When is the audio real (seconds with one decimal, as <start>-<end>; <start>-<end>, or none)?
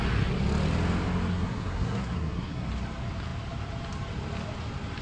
0.0-1.3; 2.7-5.0